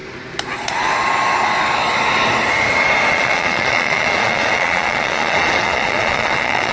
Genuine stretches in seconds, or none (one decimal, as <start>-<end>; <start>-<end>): 0.0-3.1